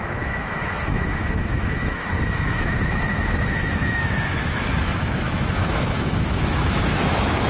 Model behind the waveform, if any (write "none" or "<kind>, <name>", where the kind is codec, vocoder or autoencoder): autoencoder, DAC-VAE